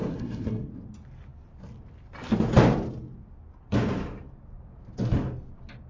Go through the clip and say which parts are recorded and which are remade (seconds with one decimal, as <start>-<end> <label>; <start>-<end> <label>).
0.0-0.7 remade; 0.7-5.9 recorded